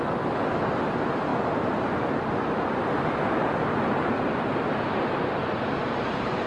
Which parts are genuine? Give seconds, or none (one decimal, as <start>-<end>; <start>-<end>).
0.0-6.5